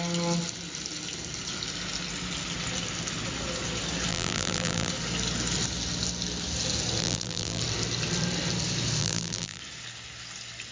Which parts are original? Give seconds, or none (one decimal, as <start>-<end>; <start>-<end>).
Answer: 0.0-4.1; 4.9-7.0; 7.6-9.0; 9.6-10.7

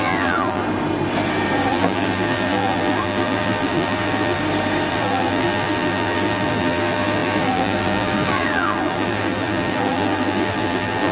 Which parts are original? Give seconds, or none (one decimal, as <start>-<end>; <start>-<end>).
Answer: 0.6-1.7; 4.4-4.9

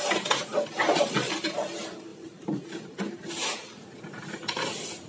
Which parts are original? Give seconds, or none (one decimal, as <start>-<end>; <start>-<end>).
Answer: 0.0-2.1; 3.3-5.1

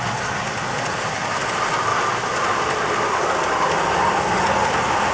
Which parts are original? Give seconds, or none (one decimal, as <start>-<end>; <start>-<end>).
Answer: 0.0-5.1

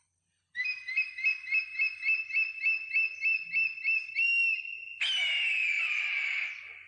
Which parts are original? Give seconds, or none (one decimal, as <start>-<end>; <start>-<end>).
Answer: 1.5-3.5; 4.4-5.5

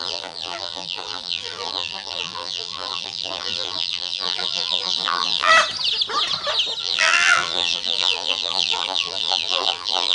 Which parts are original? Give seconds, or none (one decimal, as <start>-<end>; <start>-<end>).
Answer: 5.5-6.8

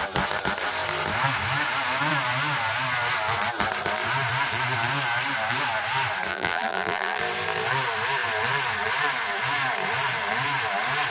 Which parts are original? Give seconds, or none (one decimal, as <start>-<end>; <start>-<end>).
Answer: 0.0-6.3; 7.2-11.1